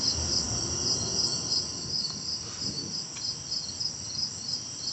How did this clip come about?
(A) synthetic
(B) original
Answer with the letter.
B